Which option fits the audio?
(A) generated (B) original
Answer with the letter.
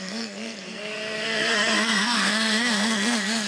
A